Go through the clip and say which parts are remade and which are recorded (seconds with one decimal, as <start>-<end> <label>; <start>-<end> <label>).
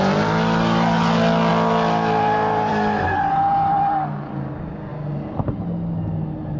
0.0-6.6 recorded